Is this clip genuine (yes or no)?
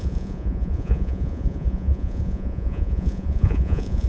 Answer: no